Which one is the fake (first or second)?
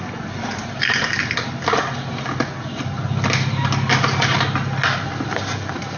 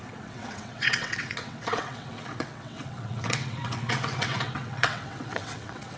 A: second